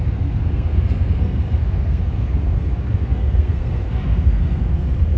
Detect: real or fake fake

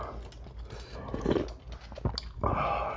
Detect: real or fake real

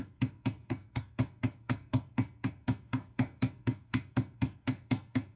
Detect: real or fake fake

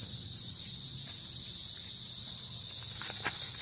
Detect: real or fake real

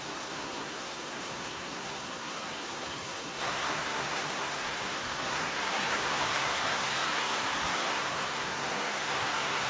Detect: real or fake fake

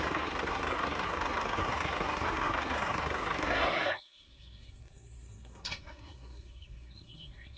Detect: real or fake fake